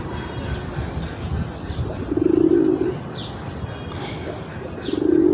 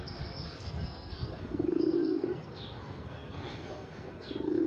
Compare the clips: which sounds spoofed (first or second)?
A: second